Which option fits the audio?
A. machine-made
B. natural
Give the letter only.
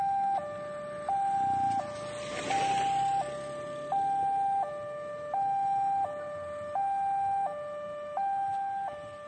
B